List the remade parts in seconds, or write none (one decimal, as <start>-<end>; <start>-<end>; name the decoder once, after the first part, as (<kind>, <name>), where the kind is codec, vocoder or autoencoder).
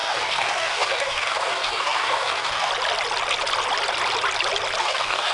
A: 0.0-2.7 (codec, DAC); 4.8-5.3